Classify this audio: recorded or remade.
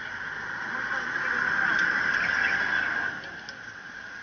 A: recorded